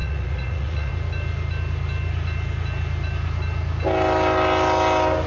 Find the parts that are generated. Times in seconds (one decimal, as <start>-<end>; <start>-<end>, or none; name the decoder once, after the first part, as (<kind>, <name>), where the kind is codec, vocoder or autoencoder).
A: 0.0-0.9 (vocoder, Vocos)